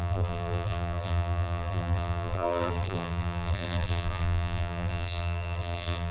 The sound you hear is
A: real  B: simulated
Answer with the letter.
B